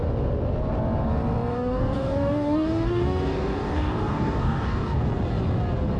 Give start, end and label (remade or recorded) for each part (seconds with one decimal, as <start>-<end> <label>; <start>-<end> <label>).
0.0-1.5 recorded; 1.5-5.1 remade; 5.1-6.0 recorded